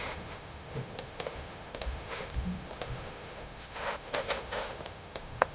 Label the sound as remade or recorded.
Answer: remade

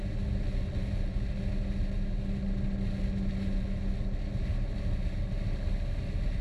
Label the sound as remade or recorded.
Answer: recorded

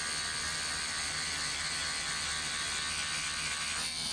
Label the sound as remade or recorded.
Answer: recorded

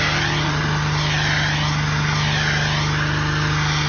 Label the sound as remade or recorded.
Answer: recorded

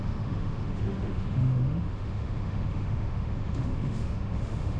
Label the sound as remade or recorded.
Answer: remade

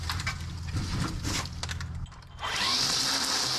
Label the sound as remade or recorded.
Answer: recorded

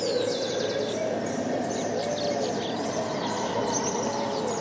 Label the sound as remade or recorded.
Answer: recorded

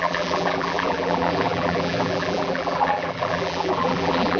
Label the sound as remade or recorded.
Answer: remade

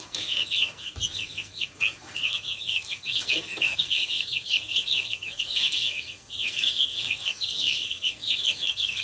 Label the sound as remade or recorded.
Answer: remade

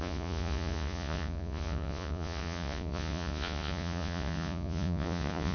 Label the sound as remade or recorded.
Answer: remade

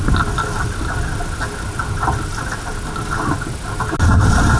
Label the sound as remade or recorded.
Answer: recorded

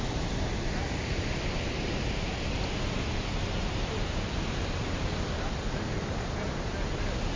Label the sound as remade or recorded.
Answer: recorded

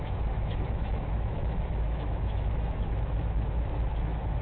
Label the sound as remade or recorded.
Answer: remade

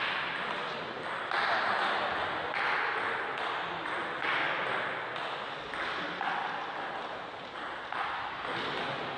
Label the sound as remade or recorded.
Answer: recorded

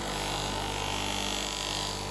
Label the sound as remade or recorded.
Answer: recorded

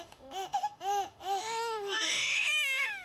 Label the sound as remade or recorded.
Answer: remade